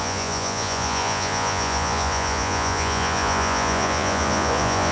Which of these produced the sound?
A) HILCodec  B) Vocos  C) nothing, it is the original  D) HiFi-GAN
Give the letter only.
B